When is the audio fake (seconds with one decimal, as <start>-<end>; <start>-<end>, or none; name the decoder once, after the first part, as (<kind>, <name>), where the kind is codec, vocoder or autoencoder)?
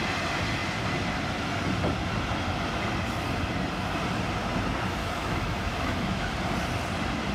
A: 5.0-6.3 (autoencoder, DAC-VAE)